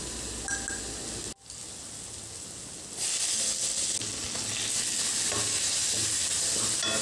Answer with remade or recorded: recorded